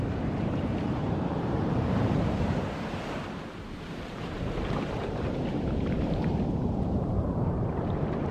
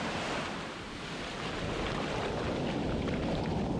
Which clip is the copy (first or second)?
first